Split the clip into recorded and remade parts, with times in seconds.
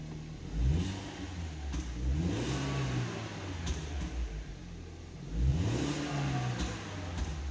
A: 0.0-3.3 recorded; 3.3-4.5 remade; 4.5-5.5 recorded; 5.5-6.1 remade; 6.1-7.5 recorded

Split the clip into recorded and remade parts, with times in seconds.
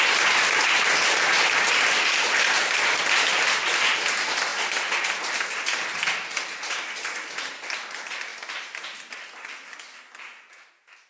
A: 0.0-4.5 recorded; 4.5-5.3 remade; 5.3-11.1 recorded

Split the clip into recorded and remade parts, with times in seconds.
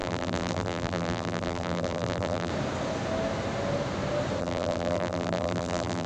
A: 0.0-2.5 remade; 2.5-4.4 recorded; 4.4-6.1 remade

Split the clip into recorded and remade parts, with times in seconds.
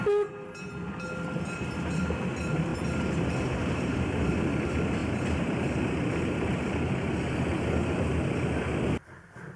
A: 0.0-2.7 recorded; 2.7-4.3 remade; 4.3-5.0 recorded; 5.0-6.7 remade; 6.7-9.6 recorded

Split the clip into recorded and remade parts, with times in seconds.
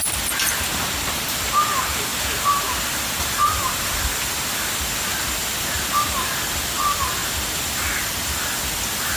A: 0.0-9.2 recorded